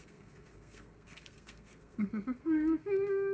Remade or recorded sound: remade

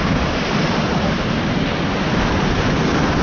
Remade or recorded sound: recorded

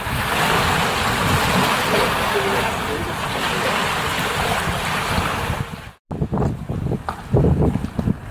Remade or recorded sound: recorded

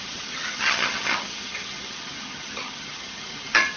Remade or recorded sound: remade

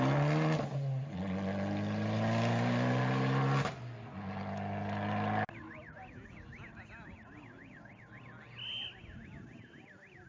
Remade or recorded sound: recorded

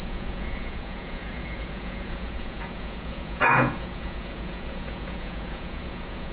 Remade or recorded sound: remade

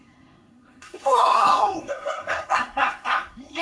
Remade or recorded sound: remade